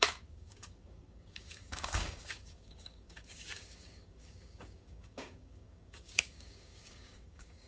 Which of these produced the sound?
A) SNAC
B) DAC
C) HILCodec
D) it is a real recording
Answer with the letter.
B